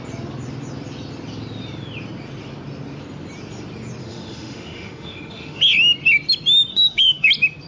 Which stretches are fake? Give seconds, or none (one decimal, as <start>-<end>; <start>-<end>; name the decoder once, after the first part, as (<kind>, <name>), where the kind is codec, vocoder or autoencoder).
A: 4.0-5.6 (autoencoder, DAC-VAE); 6.7-7.3